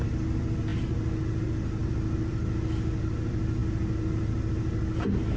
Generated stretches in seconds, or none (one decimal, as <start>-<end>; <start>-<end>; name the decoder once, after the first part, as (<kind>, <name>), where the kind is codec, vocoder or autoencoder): none